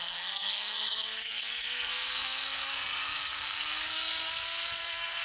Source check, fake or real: fake